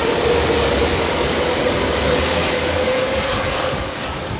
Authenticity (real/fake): fake